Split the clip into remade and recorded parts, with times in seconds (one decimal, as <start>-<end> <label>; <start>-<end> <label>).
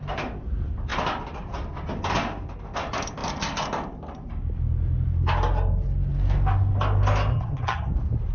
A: 0.0-7.3 recorded; 7.3-7.9 remade; 7.9-8.3 recorded